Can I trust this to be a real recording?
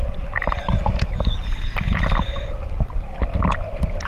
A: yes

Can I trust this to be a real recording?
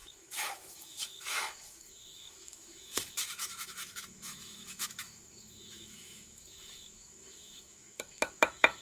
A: no